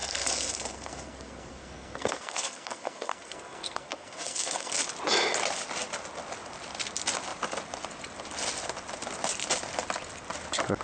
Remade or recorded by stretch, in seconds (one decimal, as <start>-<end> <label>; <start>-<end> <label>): 0.0-4.7 remade; 4.7-10.8 recorded

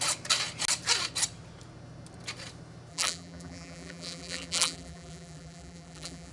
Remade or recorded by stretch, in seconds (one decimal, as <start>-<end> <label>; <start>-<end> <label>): 0.0-2.9 recorded; 2.9-6.3 remade